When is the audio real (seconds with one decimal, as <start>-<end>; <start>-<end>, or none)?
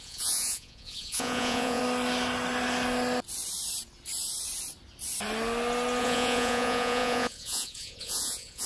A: 1.8-6.0